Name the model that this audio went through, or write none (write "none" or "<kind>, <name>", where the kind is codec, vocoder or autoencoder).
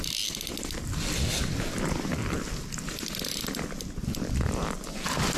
none